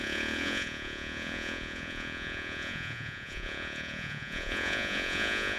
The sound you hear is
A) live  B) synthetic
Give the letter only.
B